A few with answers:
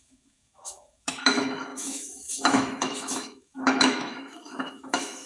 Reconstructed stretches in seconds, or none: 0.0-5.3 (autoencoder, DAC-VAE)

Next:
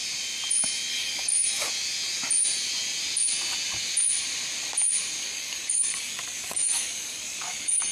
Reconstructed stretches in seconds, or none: 0.9-1.3 (codec, DAC); 5.2-7.9

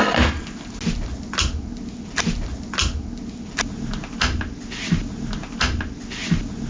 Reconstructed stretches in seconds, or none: none

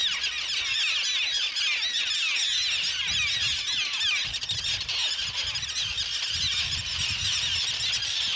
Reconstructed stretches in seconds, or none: none